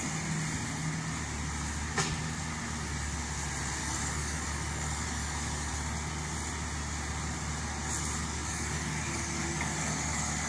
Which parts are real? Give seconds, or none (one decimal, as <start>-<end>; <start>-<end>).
0.0-3.8; 5.7-8.2